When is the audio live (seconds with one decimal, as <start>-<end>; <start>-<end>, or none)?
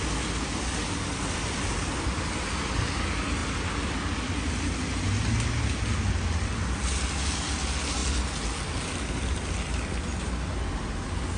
0.0-11.4